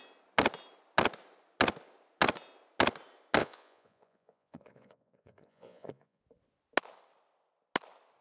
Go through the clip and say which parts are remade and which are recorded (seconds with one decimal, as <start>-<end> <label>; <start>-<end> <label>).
0.0-3.4 recorded; 3.4-6.2 remade; 6.2-8.2 recorded